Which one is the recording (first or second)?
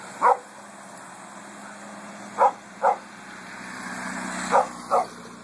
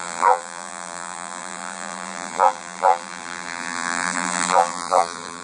first